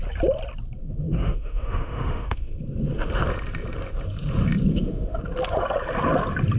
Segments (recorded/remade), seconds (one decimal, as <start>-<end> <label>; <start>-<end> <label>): 0.0-0.8 recorded; 0.8-2.5 remade; 2.5-4.7 recorded; 4.7-5.2 remade; 5.2-6.6 recorded